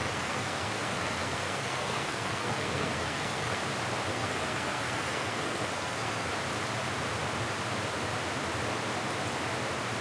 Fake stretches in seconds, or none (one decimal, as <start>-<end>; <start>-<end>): 0.0-3.6; 4.1-6.3